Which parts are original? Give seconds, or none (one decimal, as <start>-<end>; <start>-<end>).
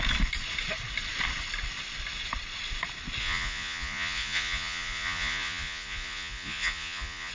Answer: 0.0-3.2